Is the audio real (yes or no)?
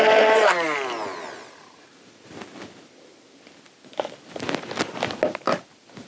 yes